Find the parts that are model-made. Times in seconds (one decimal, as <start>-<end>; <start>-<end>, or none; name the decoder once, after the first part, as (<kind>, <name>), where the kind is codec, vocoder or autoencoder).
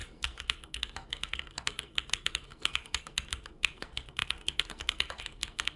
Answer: 0.0-5.8 (codec, SNAC)